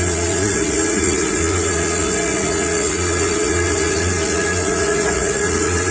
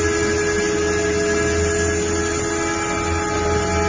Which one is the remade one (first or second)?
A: first